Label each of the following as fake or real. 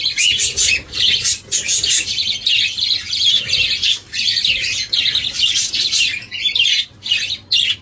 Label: real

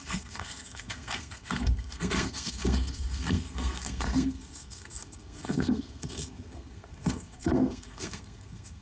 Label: fake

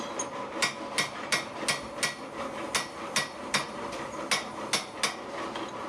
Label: real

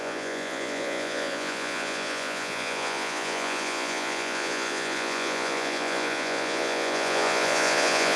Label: fake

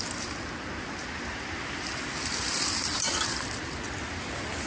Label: real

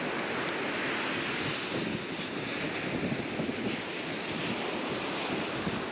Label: real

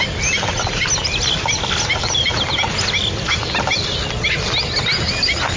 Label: real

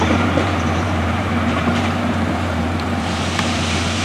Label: fake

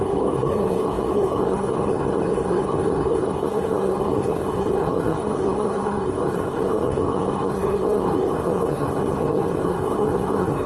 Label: fake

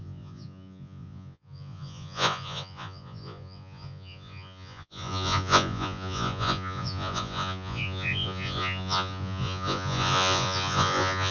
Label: fake